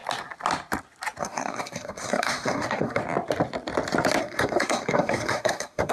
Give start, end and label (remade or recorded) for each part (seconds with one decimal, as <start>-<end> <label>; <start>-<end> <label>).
0.0-1.2 recorded; 1.2-3.0 remade; 3.0-4.2 recorded; 4.2-5.9 remade